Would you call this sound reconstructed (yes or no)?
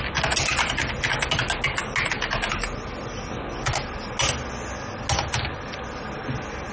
no